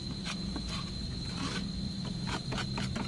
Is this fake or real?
real